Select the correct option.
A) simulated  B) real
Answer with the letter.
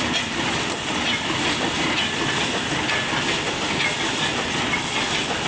A